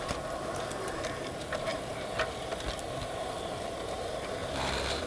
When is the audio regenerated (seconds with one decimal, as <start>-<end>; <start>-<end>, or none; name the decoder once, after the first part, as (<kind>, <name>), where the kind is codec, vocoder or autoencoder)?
4.4-5.1 (vocoder, BigVGAN v2)